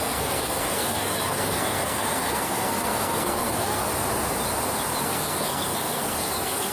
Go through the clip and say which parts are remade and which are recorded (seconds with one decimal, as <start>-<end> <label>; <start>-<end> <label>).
0.0-3.9 remade; 3.9-5.0 recorded; 5.0-6.7 remade